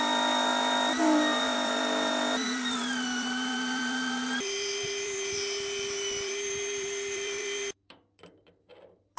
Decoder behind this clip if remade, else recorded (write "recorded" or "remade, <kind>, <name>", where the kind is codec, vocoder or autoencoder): remade, vocoder, BigVGAN v2